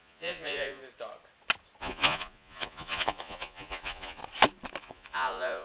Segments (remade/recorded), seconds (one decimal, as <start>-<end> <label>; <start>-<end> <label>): 0.0-0.8 remade; 0.8-1.8 recorded; 1.8-4.2 remade; 4.2-4.8 recorded; 4.8-5.6 remade